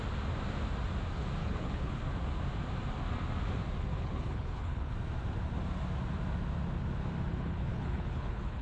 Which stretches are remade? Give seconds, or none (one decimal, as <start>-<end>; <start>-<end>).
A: 1.4-2.0; 3.9-4.9; 7.3-8.6